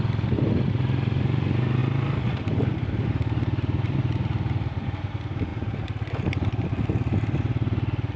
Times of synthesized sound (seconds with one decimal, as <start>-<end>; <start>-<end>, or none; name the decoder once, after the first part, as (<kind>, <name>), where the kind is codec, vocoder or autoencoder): 1.8-2.7 (vocoder, BigVGAN v2); 5.5-6.7